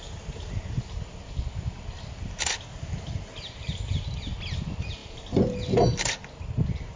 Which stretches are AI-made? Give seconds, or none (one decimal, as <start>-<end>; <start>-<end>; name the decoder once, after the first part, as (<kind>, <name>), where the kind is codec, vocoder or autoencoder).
none